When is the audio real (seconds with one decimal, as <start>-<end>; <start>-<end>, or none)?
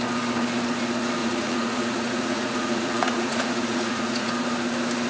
0.0-1.2; 4.3-5.1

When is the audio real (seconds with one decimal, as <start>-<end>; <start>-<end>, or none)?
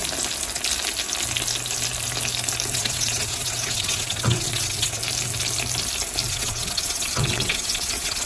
0.0-2.7; 5.0-6.3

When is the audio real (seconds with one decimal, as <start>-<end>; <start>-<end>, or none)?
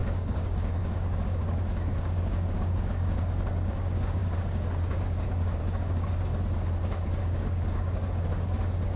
6.3-7.2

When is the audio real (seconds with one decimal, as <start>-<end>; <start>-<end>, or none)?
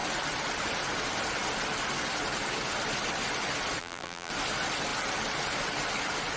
0.0-3.8; 4.3-6.4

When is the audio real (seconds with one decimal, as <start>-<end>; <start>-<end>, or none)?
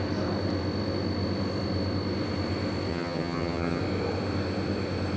0.0-2.9; 3.8-5.2